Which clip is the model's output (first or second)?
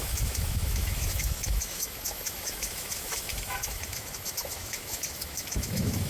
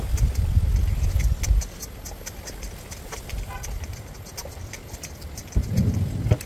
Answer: first